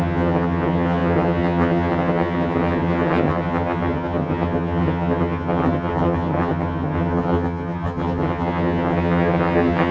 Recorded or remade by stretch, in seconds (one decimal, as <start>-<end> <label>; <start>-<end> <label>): 0.0-9.9 remade